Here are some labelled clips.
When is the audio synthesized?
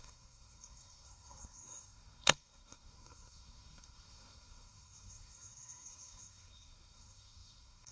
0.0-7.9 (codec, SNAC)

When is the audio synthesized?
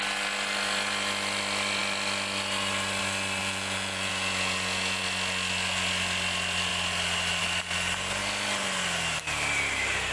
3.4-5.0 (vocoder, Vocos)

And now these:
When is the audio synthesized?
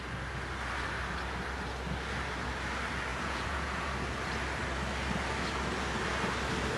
3.1-3.9 (vocoder, Vocos)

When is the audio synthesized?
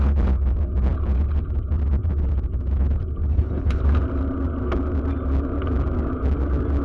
3.3-3.8 (codec, HILCodec)